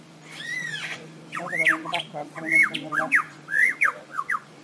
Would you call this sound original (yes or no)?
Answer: no